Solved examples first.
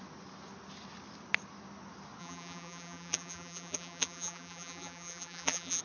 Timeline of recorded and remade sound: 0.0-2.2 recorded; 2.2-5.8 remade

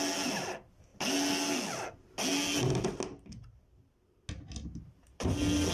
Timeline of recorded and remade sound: 0.0-5.7 recorded